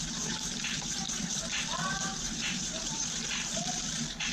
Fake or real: fake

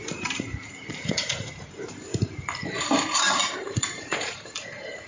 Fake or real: fake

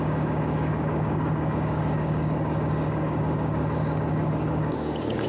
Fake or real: fake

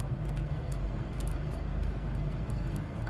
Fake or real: fake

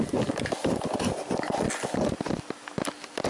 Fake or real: real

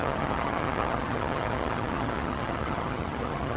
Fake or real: fake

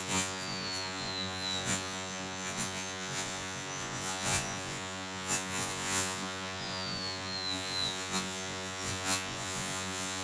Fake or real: fake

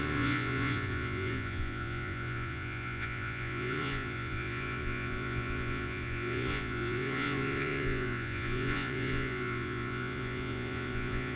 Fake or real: fake